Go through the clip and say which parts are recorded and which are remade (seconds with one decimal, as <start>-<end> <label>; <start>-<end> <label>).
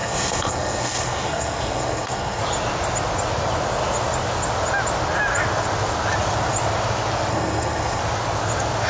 0.0-2.4 remade; 2.4-7.3 recorded; 7.3-8.0 remade; 8.0-8.9 recorded